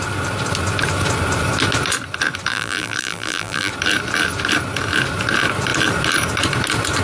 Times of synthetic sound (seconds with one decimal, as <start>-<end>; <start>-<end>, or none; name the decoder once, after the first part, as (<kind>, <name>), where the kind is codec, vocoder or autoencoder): 2.5-3.7 (vocoder, BigVGAN v2)